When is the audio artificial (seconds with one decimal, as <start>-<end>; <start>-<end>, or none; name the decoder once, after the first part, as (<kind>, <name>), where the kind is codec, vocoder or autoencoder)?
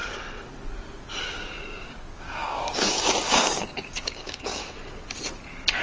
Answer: 1.2-4.6 (codec, DAC)